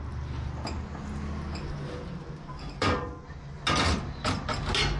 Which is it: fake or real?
real